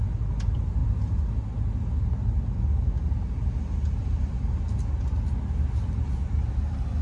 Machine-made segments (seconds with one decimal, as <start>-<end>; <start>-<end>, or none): none